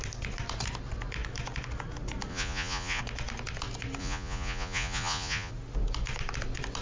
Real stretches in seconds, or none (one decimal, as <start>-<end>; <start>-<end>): 0.0-2.3; 3.0-4.0; 5.5-6.8